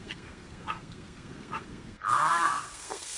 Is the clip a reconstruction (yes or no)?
yes